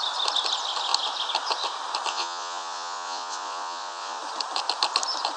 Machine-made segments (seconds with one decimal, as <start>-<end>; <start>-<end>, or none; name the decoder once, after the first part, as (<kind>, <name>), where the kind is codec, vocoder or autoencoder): 2.1-4.2 (vocoder, Vocos)